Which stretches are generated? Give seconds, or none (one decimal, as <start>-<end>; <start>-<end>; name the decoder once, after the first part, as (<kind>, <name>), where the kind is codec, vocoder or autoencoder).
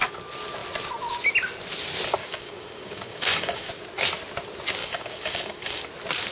2.2-3.7 (codec, DAC); 4.8-5.8